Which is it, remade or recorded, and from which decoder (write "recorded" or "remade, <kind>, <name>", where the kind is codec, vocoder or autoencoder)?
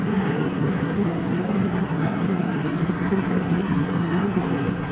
remade, codec, SNAC